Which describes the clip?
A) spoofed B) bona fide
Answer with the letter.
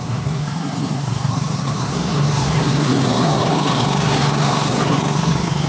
A